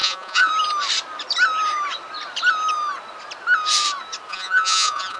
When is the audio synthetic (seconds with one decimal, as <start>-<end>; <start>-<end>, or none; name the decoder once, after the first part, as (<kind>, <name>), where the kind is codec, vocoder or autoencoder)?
0.0-0.5 (vocoder, Vocos); 4.3-5.2